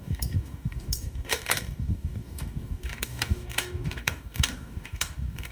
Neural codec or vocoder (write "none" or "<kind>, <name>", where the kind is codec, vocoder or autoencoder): codec, DAC